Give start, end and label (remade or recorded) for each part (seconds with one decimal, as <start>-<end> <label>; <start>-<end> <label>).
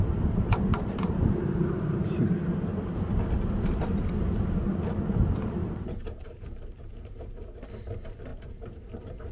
0.0-0.7 recorded; 0.7-2.1 remade; 2.1-5.6 recorded; 5.6-7.6 remade; 7.6-8.3 recorded; 8.3-9.3 remade